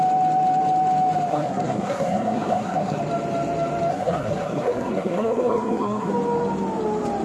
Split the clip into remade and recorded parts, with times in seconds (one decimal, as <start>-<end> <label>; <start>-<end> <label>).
0.0-1.3 recorded; 1.3-3.0 remade; 3.0-3.9 recorded; 3.9-6.1 remade; 6.1-7.2 recorded